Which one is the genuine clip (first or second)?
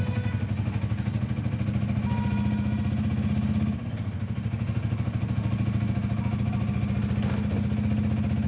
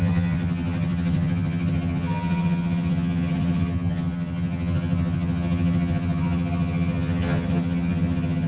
first